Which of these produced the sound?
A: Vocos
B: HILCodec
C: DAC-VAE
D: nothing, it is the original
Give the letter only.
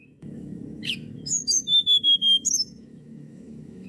C